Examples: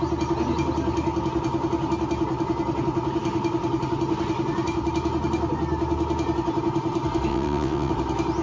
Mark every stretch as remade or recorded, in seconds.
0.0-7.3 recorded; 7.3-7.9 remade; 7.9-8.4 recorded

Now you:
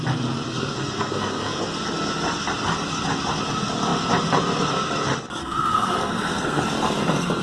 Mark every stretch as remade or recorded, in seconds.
0.0-0.5 recorded; 0.5-1.6 remade; 1.6-5.4 recorded; 5.4-6.6 remade; 6.6-7.4 recorded

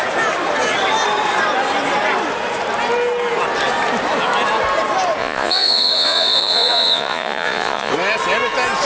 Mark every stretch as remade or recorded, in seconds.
0.0-5.2 recorded; 5.2-7.9 remade; 7.9-8.8 recorded

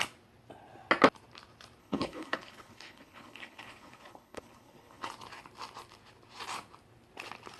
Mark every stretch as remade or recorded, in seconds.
0.0-1.8 recorded; 1.8-5.1 remade; 5.1-7.6 recorded

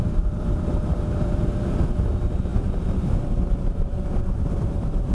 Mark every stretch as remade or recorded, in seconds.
0.0-5.1 remade

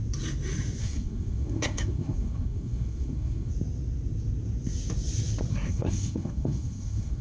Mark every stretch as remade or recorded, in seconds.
0.0-0.8 recorded; 0.8-3.5 remade; 3.5-5.5 recorded; 5.5-7.2 remade

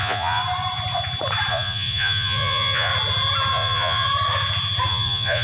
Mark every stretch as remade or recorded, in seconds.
0.0-0.4 remade; 0.4-1.5 recorded; 1.5-2.9 remade; 2.9-3.5 recorded; 3.5-4.1 remade; 4.1-4.9 recorded; 4.9-5.4 remade

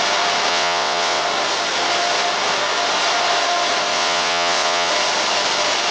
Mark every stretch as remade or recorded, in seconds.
0.0-0.5 recorded; 0.5-1.2 remade; 1.2-3.9 recorded; 3.9-4.9 remade; 4.9-5.9 recorded